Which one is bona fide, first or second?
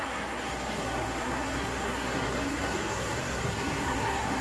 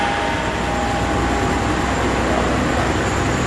second